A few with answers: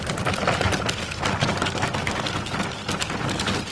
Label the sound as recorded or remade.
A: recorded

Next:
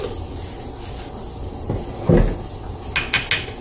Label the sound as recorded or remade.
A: recorded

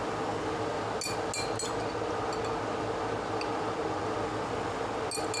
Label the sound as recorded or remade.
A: recorded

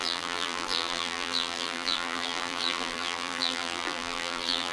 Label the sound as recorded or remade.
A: remade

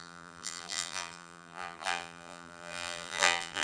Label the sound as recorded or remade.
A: remade